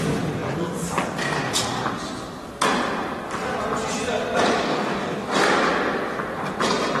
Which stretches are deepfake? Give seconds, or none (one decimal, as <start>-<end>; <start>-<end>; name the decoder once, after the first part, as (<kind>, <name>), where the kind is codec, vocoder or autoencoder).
4.7-5.4 (codec, DAC)